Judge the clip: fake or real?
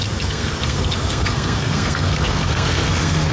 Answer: fake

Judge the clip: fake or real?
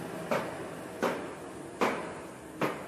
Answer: real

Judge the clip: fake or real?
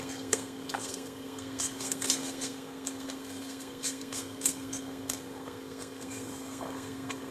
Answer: fake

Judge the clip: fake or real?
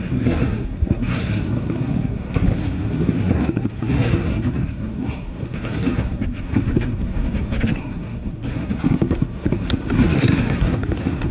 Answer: fake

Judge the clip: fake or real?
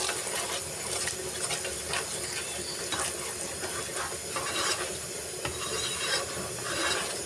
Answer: real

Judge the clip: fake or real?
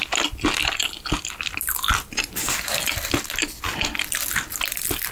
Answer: real